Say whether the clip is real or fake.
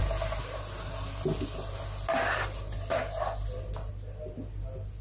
real